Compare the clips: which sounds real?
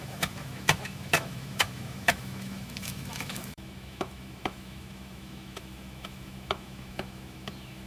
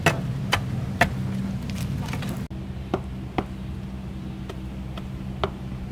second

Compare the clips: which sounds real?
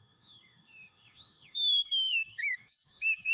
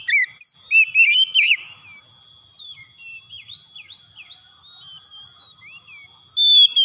second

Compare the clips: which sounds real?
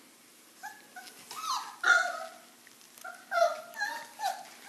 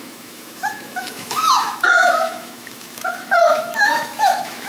first